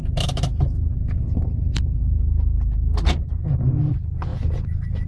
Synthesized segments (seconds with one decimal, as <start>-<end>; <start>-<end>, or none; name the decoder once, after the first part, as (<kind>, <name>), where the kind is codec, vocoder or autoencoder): 4.3-5.1 (vocoder, Vocos)